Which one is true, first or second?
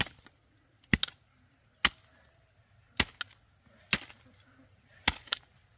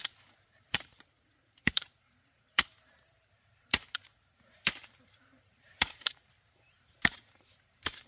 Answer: first